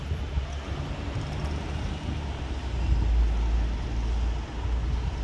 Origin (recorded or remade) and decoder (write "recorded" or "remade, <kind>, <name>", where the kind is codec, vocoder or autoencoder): recorded